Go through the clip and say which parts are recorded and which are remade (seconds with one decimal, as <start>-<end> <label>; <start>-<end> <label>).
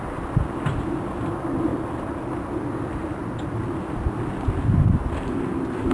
0.0-1.7 recorded; 1.7-2.3 remade; 2.3-2.9 recorded; 2.9-3.6 remade; 3.6-5.9 recorded